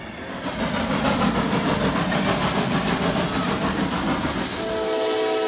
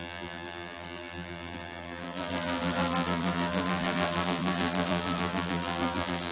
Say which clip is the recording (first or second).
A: first